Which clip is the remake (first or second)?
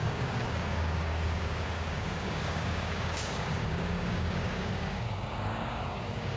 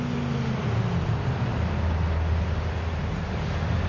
first